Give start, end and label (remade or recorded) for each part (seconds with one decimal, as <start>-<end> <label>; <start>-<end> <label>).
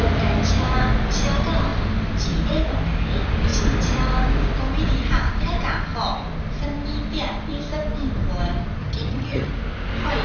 0.0-8.8 recorded; 8.8-9.5 remade; 9.5-10.2 recorded